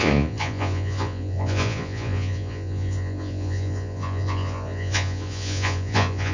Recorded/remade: remade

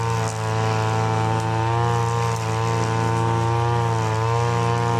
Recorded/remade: recorded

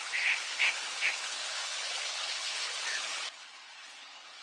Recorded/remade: remade